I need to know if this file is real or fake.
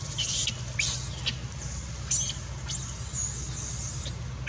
real